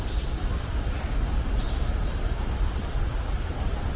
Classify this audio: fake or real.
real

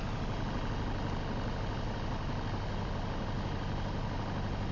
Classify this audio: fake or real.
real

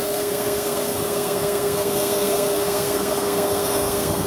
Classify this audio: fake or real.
fake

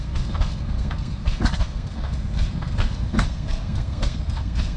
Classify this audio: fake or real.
fake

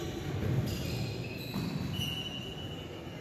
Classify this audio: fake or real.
real